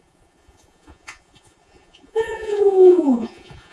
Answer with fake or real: fake